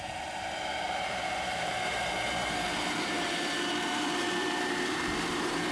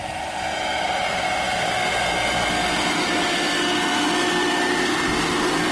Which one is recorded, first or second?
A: second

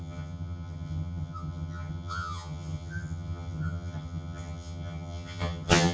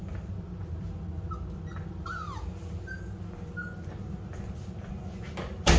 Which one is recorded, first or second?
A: second